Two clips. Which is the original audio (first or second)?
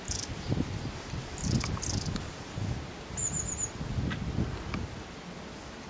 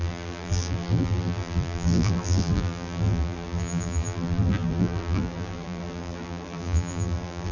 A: first